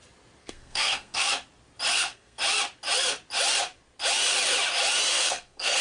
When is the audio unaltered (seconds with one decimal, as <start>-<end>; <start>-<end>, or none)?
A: 0.0-0.4; 1.3-1.9; 2.4-5.2